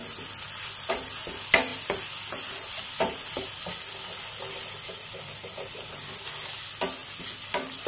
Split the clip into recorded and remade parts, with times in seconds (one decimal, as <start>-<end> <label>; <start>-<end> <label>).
0.0-7.9 recorded